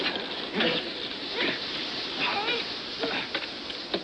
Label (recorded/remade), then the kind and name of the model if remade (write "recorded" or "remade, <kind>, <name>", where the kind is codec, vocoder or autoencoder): recorded